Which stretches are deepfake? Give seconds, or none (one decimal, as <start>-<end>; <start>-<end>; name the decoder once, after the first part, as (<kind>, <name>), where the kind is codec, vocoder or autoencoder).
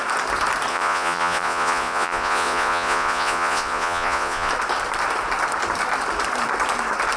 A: 0.7-4.5 (vocoder, Vocos)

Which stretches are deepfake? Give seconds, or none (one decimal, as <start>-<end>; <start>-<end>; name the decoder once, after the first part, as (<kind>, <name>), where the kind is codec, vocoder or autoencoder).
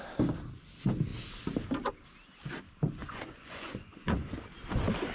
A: 3.0-4.3 (vocoder, Vocos)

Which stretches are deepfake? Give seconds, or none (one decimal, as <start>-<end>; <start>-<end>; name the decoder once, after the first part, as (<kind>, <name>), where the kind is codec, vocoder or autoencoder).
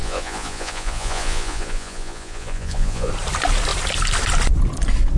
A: 0.0-3.1 (vocoder, Vocos)